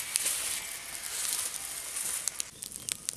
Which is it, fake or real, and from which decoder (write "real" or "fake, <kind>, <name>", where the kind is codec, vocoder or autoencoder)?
real